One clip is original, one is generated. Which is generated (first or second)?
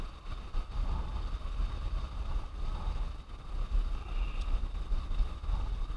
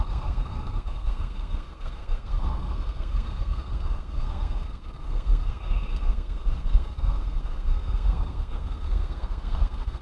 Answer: second